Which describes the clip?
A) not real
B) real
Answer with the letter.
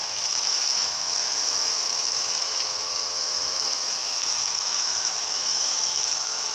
A